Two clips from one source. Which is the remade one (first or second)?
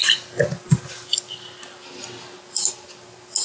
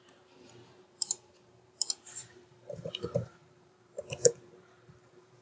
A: second